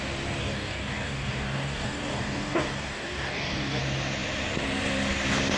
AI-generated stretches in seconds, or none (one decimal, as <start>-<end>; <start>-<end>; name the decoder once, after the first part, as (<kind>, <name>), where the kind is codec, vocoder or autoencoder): 0.4-3.8 (codec, DAC)